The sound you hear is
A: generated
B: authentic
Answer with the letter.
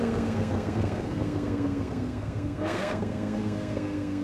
A